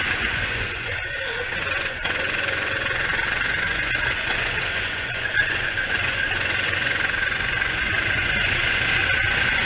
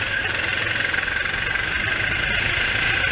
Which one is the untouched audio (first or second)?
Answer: second